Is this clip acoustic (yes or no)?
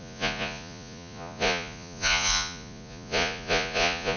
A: no